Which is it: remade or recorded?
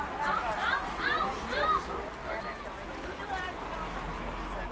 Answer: recorded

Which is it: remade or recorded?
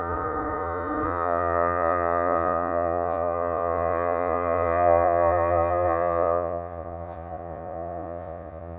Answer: remade